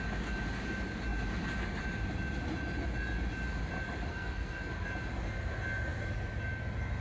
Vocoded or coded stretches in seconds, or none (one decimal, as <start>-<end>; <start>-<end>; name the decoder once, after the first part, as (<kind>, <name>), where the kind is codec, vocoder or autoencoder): 4.1-4.6 (codec, SNAC)

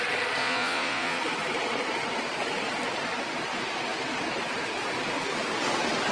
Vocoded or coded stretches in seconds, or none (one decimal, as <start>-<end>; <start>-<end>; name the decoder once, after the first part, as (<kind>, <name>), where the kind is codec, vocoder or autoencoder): 0.4-1.2 (vocoder, Vocos)